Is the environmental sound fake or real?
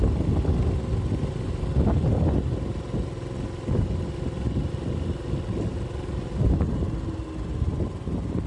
real